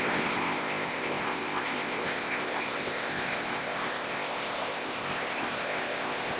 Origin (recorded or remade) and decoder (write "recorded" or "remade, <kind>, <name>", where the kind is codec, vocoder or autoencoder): remade, codec, ZipCodec